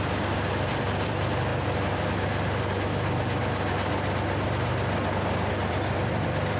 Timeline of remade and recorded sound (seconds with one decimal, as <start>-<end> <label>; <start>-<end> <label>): 0.0-1.5 remade; 1.5-5.5 recorded; 5.5-6.6 remade